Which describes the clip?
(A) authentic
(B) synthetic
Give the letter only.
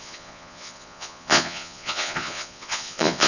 B